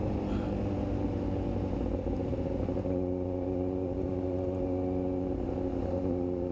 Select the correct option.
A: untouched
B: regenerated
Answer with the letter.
A